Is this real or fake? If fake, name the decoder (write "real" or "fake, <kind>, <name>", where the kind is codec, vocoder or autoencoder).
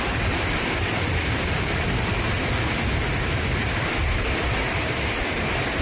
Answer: real